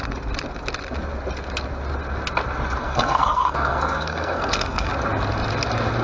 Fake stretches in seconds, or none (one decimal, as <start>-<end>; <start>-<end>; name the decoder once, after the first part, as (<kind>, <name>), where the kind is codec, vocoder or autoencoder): 2.8-4.9 (codec, SNAC)